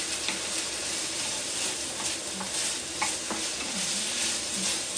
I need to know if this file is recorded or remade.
recorded